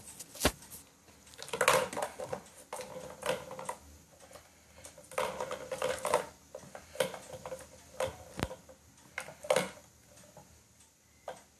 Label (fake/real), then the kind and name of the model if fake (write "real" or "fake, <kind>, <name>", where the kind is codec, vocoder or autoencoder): real